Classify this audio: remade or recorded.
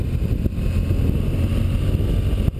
recorded